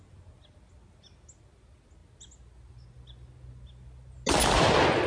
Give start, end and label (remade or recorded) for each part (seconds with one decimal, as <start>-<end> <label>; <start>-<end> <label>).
0.0-5.1 recorded